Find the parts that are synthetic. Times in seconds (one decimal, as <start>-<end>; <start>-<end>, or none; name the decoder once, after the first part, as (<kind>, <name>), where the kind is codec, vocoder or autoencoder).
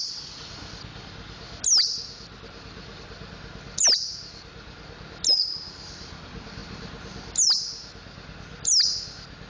none